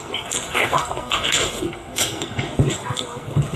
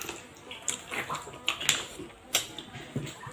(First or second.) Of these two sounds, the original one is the second